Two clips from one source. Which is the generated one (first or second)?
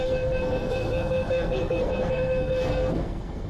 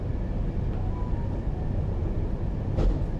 first